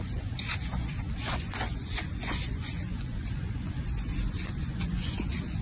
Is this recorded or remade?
remade